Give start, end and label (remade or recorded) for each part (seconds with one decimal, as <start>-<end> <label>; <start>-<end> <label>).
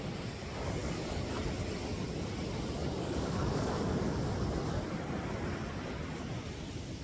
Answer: 0.0-2.8 recorded; 2.8-4.3 remade; 4.3-7.0 recorded